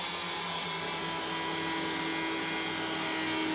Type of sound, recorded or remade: recorded